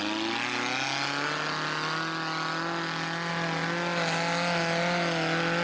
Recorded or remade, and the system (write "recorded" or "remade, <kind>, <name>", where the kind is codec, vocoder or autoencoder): recorded